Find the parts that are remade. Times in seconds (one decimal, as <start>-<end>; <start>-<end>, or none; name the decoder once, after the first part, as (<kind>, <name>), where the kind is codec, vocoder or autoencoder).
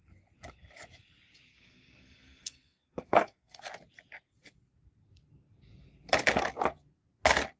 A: 1.5-3.6 (codec, SNAC)